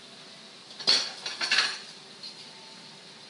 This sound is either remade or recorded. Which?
recorded